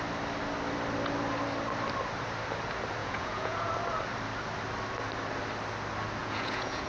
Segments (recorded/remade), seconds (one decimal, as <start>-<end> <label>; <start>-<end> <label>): 0.0-3.0 recorded; 3.0-3.7 remade; 3.7-6.2 recorded; 6.2-6.9 remade